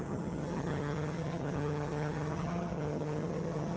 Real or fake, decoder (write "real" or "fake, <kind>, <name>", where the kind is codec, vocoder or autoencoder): fake, vocoder, HiFi-GAN